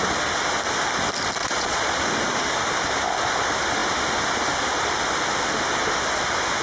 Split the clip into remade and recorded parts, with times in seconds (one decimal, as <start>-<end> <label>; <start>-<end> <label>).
0.0-1.4 recorded; 1.4-1.9 remade; 1.9-6.6 recorded